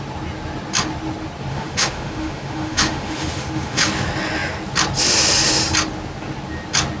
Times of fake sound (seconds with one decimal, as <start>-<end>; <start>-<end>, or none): 1.5-3.9